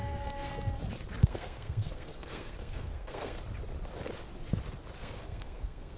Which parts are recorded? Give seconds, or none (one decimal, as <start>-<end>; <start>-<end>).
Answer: 0.5-1.2; 3.4-5.0